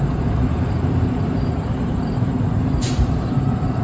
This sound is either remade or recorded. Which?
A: remade